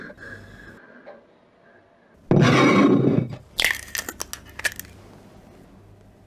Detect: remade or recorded recorded